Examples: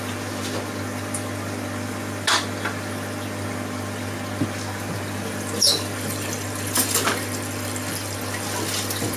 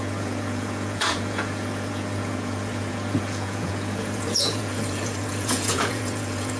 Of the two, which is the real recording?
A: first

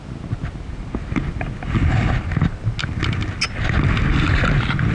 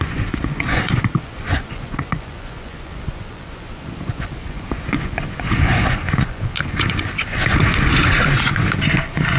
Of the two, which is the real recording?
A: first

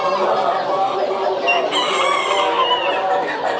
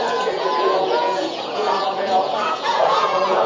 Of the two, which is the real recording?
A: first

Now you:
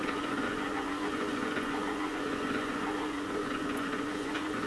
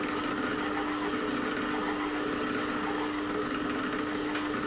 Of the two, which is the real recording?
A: second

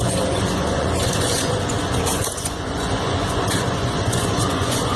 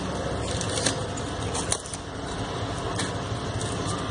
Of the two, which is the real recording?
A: second